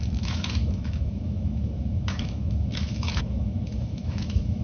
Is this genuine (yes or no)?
no